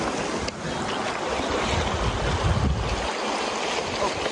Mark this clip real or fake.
real